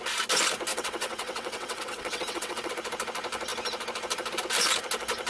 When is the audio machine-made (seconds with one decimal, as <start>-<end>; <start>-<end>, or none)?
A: 0.7-2.7